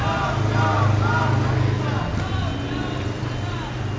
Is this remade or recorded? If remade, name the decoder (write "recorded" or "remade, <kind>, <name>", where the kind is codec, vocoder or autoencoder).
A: recorded